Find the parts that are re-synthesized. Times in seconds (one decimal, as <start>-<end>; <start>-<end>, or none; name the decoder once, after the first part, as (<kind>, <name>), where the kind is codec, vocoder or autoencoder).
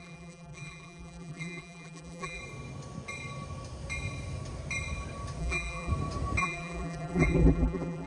0.0-2.4 (vocoder, BigVGAN v2); 5.4-5.9; 6.4-8.1